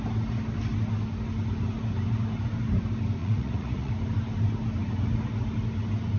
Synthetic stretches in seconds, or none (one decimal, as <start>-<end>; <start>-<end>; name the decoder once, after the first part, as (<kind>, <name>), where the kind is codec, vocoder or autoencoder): 3.2-3.9 (vocoder, Vocos)